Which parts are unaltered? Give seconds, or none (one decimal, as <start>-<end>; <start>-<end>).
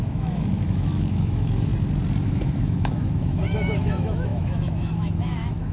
1.7-2.3